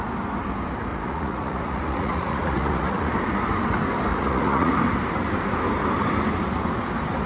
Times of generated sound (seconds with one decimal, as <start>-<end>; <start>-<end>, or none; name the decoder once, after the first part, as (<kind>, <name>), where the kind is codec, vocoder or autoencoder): 0.9-3.1 (vocoder, Vocos); 4.1-4.7